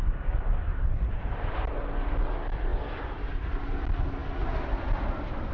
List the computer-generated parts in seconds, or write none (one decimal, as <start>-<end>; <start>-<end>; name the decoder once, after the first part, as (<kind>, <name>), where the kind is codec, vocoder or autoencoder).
0.7-1.3 (vocoder, BigVGAN v2)